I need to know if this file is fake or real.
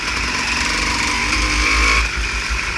real